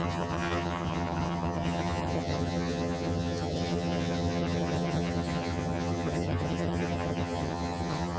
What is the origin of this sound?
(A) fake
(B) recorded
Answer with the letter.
A